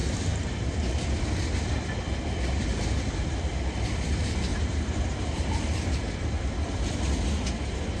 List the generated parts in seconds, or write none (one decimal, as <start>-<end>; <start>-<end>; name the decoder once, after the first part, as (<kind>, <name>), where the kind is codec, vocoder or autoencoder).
4.5-5.6 (vocoder, BigVGAN v2)